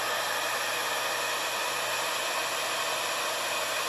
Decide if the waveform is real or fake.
real